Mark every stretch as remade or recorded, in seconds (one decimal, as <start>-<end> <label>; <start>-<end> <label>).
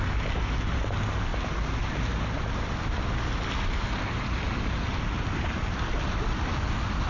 0.0-7.1 recorded